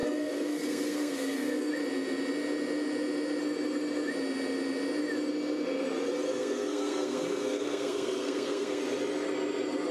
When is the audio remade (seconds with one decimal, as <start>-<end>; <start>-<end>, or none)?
0.0-1.7; 6.3-8.8